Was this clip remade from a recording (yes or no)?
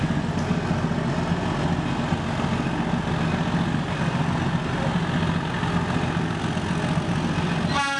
no